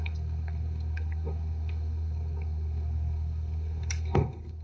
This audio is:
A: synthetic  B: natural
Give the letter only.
A